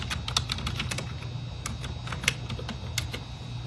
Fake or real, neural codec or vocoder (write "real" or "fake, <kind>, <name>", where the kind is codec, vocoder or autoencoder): real